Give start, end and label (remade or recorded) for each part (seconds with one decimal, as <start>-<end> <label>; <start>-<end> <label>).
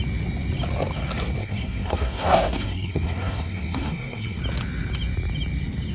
0.0-1.4 recorded; 1.4-4.4 remade; 4.4-5.9 recorded